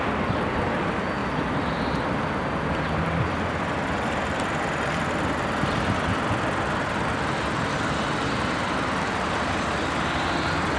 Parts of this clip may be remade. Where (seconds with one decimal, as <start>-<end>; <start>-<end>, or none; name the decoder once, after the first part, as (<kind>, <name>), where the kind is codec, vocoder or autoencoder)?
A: none